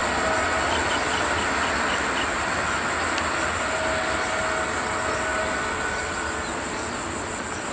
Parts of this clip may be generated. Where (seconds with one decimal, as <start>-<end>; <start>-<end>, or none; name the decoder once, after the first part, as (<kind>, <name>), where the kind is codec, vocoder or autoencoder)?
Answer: none